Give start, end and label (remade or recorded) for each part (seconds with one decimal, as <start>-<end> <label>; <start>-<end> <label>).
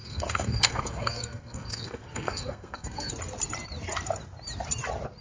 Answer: 0.0-3.1 remade; 3.1-5.2 recorded